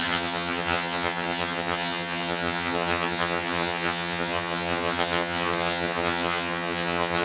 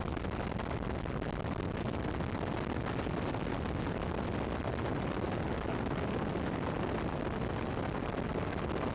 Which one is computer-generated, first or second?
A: first